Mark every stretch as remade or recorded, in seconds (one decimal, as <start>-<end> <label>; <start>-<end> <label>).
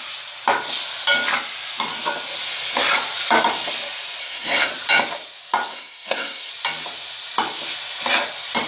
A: 0.0-4.2 recorded; 4.2-4.7 remade; 4.7-5.7 recorded; 5.7-6.5 remade; 6.5-8.7 recorded